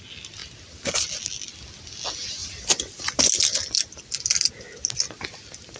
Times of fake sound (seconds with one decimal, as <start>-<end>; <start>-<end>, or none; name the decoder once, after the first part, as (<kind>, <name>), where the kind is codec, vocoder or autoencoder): 0.4-1.2 (vocoder, BigVGAN v2); 2.4-3.0

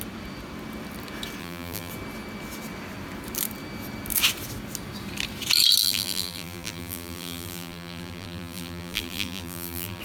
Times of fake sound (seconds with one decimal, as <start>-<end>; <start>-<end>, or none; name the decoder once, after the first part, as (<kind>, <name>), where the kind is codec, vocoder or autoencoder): 1.4-1.9 (vocoder, BigVGAN v2); 5.8-10.0

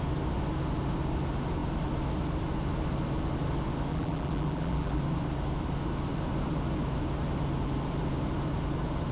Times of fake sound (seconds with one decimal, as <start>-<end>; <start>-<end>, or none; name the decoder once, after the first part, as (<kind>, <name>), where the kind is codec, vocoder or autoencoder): 3.9-5.0 (vocoder, BigVGAN v2)

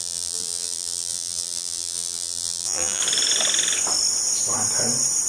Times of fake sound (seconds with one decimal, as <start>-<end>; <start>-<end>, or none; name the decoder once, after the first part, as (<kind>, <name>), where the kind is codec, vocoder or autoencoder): 0.0-3.0 (vocoder, BigVGAN v2)

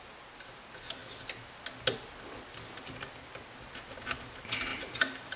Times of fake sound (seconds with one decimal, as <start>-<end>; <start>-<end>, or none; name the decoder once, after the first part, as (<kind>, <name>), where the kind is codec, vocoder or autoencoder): 4.7-5.4 (vocoder, BigVGAN v2)

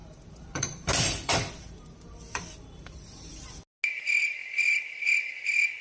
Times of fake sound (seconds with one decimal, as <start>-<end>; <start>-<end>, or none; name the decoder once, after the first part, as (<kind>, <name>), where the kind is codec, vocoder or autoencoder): 0.0-3.5 (vocoder, BigVGAN v2)